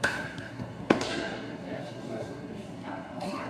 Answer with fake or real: fake